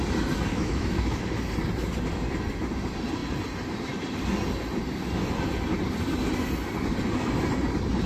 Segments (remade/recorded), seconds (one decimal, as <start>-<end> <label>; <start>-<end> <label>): 0.0-0.5 recorded; 0.5-1.2 remade; 1.2-8.1 recorded